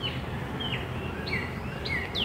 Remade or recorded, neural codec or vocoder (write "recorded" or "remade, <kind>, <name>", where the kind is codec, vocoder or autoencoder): recorded